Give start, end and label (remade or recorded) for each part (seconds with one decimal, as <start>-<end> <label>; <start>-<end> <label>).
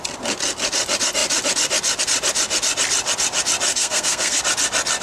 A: 0.0-3.7 recorded; 3.7-4.4 remade; 4.4-5.0 recorded